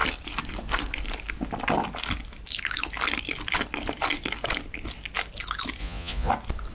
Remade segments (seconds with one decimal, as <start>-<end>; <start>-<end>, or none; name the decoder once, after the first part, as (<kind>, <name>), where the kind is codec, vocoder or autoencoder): 5.8-6.3 (vocoder, Vocos)